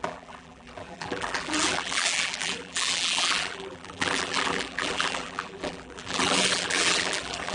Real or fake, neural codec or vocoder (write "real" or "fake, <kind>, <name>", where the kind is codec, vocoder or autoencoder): fake, vocoder, BigVGAN v2